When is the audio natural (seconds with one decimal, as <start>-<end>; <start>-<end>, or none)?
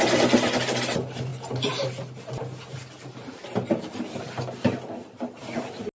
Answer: 0.0-6.0